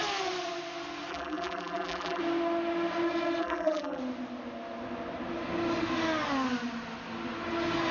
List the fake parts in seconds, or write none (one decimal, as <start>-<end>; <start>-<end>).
1.1-2.2; 3.4-4.0